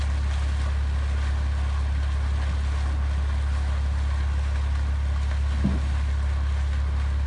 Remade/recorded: recorded